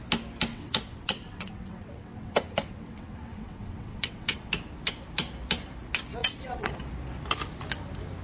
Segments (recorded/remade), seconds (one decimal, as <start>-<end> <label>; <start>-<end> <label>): 0.0-0.5 recorded; 0.5-4.5 remade; 4.5-6.2 recorded; 6.2-6.9 remade; 6.9-8.2 recorded